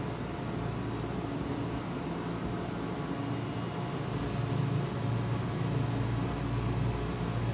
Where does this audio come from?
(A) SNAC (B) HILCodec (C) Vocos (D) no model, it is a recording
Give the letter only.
D